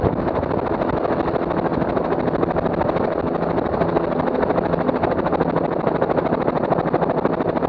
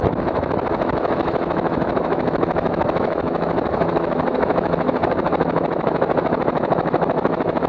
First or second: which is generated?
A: second